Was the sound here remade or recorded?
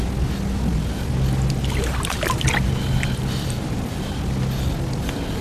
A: recorded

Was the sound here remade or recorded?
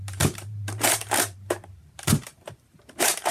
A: remade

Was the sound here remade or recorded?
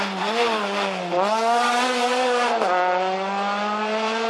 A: recorded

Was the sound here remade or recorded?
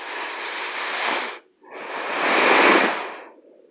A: recorded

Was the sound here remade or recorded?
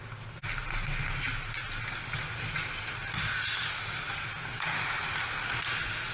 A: recorded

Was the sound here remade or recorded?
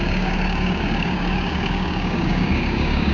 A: remade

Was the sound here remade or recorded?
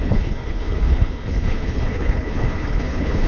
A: remade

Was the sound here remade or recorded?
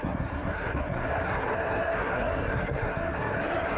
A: remade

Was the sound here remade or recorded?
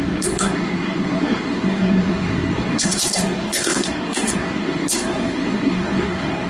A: remade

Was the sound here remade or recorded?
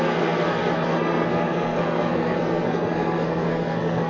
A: remade